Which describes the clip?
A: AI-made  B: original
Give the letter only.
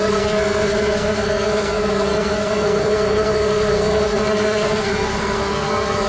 A